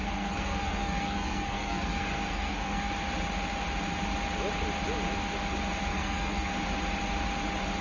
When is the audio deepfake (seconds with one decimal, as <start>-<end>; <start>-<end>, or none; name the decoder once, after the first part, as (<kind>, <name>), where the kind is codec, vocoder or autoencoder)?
0.0-2.9 (codec, SNAC); 5.9-6.5